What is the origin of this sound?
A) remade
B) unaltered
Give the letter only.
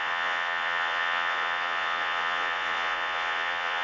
A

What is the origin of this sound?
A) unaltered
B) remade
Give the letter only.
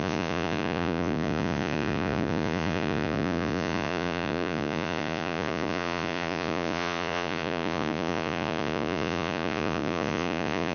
B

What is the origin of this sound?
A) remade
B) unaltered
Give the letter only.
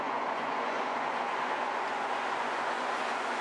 A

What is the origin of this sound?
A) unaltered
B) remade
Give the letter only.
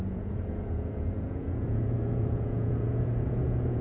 B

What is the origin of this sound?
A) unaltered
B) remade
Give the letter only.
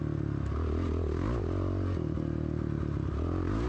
A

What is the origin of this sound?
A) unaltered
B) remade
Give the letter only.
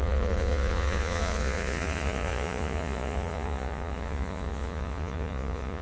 B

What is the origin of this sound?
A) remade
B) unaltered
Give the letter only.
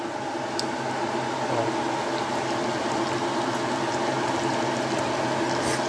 B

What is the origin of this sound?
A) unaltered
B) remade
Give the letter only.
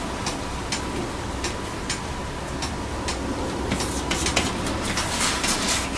A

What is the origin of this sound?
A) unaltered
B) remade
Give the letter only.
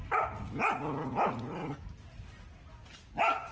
A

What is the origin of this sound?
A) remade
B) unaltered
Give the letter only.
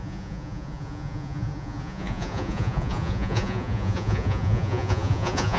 A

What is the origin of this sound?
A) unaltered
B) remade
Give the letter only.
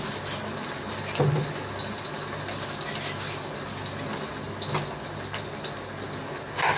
A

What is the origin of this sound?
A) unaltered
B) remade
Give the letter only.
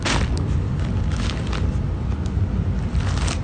A